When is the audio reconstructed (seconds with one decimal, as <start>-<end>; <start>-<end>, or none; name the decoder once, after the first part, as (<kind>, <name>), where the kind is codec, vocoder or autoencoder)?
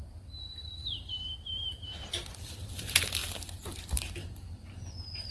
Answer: 3.2-4.3 (vocoder, BigVGAN v2)